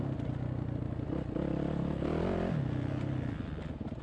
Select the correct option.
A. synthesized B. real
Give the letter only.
B